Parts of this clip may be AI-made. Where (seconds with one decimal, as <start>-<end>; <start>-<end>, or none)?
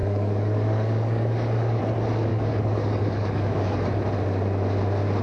0.0-1.8; 2.3-4.0